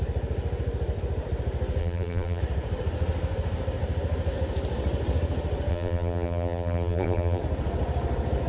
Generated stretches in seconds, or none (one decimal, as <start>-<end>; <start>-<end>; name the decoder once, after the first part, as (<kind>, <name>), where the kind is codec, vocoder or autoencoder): 1.8-2.4 (vocoder, BigVGAN v2); 5.7-7.4